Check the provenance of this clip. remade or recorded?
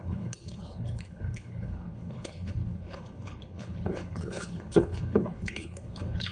remade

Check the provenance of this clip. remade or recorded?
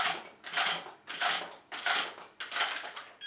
recorded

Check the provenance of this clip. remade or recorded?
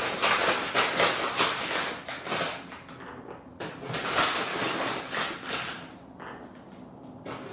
recorded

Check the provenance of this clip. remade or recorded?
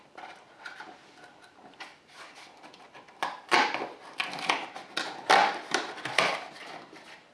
remade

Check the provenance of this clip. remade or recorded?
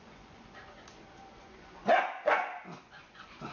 remade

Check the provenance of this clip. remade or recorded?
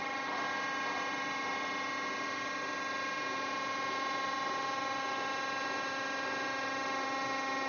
recorded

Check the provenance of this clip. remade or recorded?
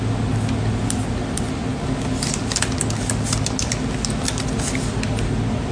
recorded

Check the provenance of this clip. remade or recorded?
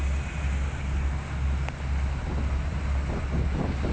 recorded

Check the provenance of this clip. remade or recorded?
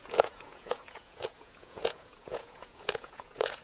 remade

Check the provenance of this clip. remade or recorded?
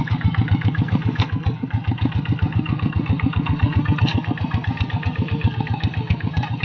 remade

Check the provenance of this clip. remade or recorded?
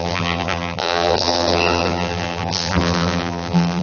remade